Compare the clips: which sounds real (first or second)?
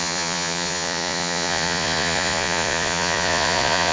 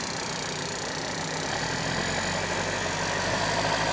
second